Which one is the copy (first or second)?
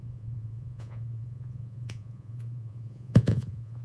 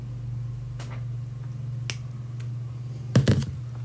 first